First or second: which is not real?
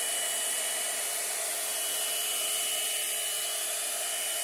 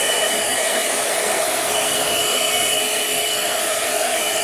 second